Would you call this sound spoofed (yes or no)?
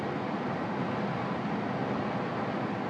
no